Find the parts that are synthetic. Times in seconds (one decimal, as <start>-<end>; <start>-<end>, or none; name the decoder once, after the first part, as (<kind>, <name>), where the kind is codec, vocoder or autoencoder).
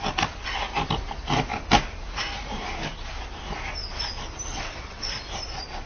4.5-5.1 (vocoder, WaveNeXt)